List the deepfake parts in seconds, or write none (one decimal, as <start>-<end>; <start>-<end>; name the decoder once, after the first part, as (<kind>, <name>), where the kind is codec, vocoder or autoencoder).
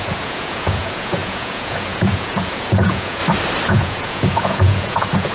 0.0-3.2 (vocoder, Vocos); 3.7-5.3